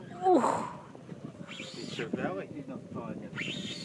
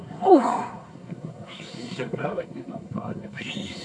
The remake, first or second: second